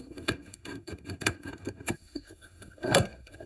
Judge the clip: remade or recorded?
remade